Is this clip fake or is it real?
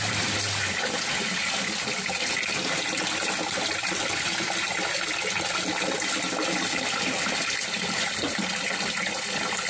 real